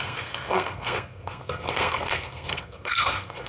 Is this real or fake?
fake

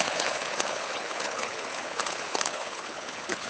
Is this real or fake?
fake